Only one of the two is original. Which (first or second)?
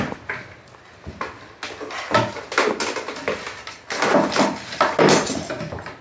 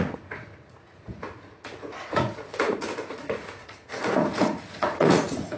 first